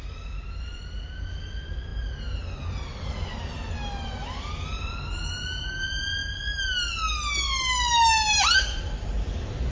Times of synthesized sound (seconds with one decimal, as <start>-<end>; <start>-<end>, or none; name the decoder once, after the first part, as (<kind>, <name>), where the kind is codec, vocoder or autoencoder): none